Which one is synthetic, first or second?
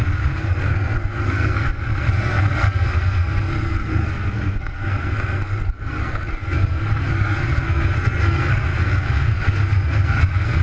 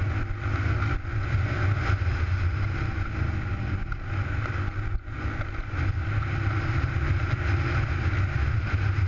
first